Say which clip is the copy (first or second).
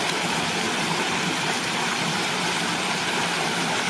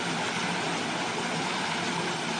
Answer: first